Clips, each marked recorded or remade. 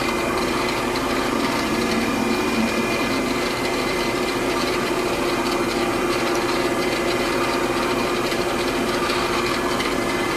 remade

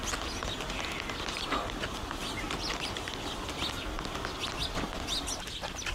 recorded